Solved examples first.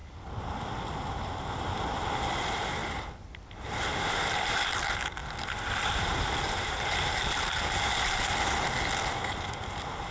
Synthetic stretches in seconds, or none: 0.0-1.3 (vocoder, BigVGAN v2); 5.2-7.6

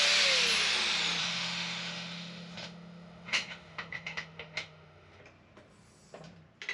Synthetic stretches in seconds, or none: 1.2-5.2 (autoencoder, DAC-VAE)

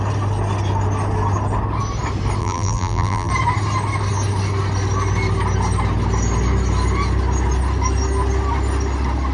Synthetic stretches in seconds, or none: 2.4-3.3 (vocoder, BigVGAN v2)

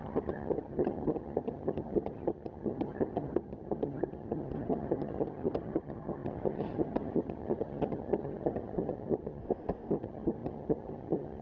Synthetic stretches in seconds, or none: 0.0-9.4 (vocoder, HiFi-GAN); 9.9-11.4